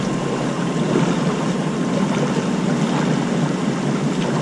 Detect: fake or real real